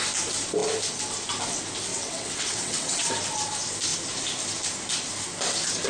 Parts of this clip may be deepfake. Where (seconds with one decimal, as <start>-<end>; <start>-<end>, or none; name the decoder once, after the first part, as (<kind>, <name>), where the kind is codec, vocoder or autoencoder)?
1.9-3.1 (vocoder, WaveNeXt)